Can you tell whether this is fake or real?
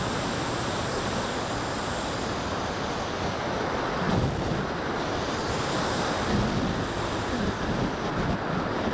real